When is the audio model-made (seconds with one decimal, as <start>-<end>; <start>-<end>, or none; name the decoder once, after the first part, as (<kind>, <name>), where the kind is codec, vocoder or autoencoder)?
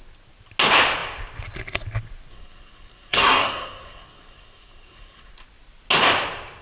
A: 2.3-5.3 (codec, SNAC)